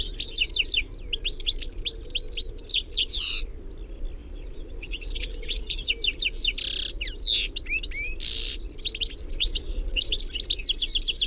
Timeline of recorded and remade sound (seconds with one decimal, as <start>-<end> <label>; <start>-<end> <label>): 0.0-2.7 recorded; 2.7-3.3 remade; 3.3-4.2 recorded; 4.2-5.9 remade; 5.9-9.2 recorded; 9.2-10.2 remade; 10.2-11.3 recorded